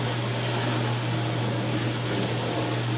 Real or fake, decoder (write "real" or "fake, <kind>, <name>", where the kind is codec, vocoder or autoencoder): real